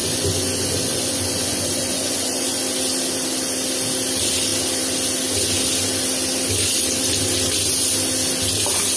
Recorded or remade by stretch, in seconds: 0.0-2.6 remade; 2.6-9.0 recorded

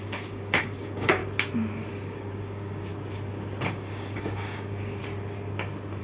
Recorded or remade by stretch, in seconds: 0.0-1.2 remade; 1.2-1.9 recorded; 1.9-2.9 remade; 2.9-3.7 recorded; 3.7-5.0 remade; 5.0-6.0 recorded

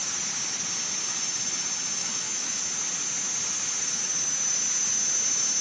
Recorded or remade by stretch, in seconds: 0.0-2.0 recorded; 2.0-2.6 remade; 2.6-5.6 recorded